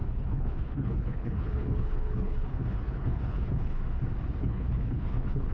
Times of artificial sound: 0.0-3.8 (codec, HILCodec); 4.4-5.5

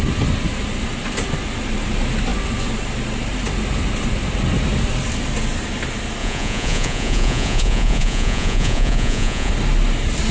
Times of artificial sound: 6.2-9.5 (vocoder, Vocos)

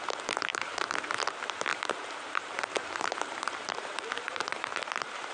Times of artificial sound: 0.5-1.2 (vocoder, BigVGAN v2); 1.7-5.3

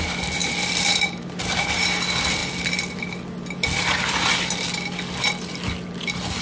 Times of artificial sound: none

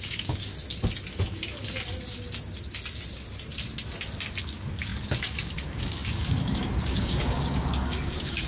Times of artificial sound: 0.0-0.5 (codec, DAC); 4.4-8.5

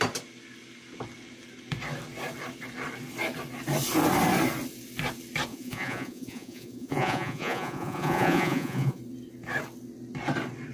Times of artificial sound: 5.5-9.0 (vocoder, Vocos)

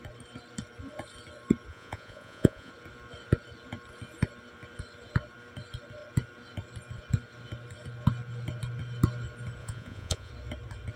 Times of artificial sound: 1.7-2.7 (vocoder, Vocos); 9.6-10.3

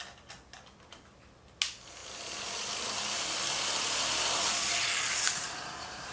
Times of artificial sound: none